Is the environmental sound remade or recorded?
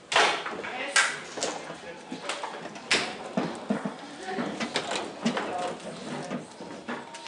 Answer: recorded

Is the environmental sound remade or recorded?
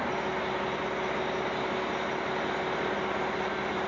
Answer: recorded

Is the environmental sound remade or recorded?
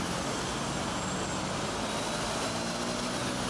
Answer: recorded